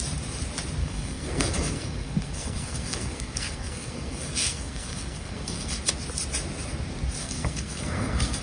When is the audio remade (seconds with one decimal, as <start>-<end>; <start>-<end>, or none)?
0.8-5.8; 7.2-8.4